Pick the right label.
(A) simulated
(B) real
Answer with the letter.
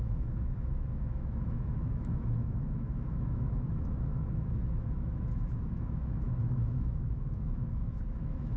A